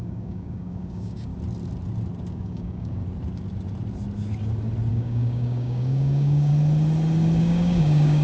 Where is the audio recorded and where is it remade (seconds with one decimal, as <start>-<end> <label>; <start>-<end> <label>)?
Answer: 0.0-1.3 remade; 1.3-2.3 recorded; 2.3-3.0 remade; 3.0-4.9 recorded; 4.9-6.5 remade; 6.5-7.4 recorded; 7.4-8.2 remade